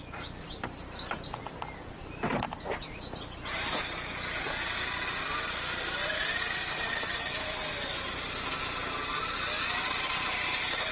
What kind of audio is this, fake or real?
real